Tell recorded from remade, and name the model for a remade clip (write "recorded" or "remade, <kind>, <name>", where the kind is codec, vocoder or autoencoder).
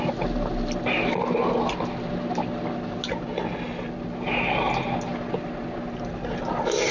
recorded